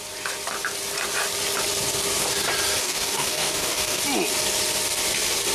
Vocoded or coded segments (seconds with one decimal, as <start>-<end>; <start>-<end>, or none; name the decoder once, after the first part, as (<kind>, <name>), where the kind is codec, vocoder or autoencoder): 2.8-4.0 (codec, DAC)